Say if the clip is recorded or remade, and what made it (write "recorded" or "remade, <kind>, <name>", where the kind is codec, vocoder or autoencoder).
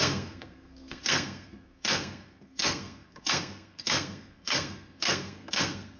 remade, codec, SNAC